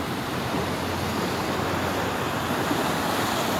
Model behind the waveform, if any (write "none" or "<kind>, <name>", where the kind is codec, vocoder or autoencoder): none